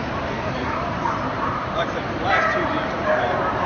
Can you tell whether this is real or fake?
fake